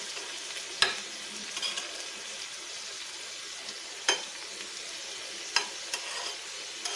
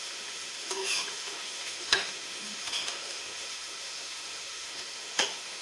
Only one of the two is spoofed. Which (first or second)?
second